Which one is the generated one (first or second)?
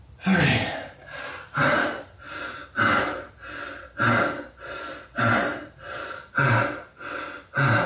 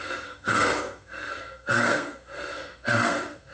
second